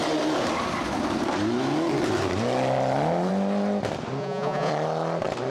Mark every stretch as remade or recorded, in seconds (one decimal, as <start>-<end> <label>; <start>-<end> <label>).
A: 0.0-4.2 recorded; 4.2-4.7 remade; 4.7-5.5 recorded